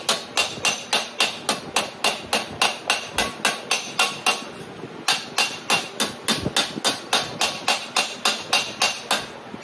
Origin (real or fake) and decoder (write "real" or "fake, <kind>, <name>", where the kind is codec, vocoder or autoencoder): real